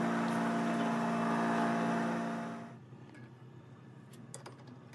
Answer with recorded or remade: recorded